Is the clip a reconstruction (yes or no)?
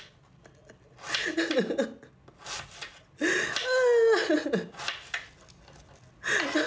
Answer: no